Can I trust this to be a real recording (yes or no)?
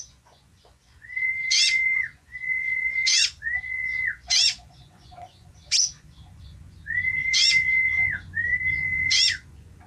no